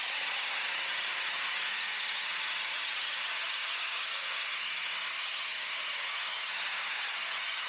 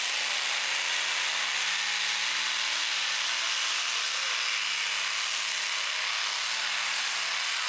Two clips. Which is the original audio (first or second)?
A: second